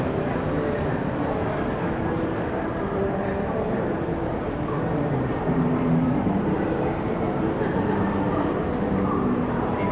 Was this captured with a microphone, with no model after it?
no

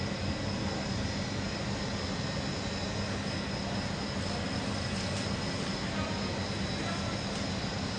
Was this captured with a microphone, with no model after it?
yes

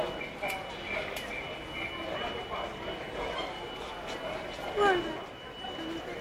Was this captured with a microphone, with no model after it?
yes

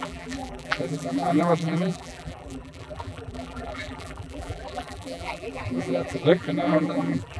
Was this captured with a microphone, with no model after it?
no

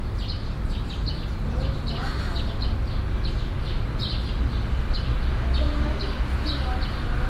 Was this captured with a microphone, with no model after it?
yes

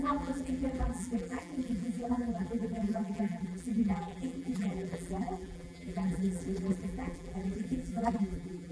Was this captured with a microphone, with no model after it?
no